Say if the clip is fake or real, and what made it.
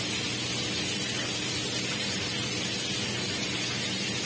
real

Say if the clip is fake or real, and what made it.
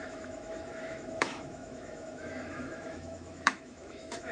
fake, autoencoder, DAC-VAE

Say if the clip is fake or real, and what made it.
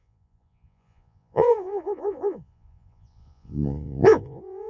fake, vocoder, Vocos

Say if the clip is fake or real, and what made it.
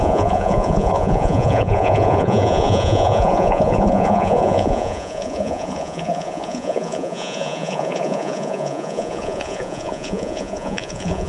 fake, vocoder, Vocos